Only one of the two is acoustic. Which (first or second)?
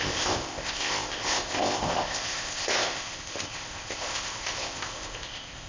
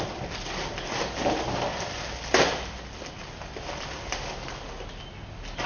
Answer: second